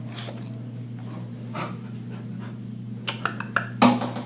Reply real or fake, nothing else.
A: real